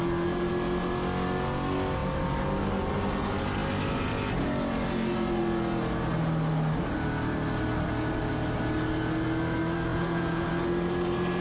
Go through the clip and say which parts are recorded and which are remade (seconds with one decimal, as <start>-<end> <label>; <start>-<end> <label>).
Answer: 0.0-9.9 recorded; 9.9-10.5 remade; 10.5-11.4 recorded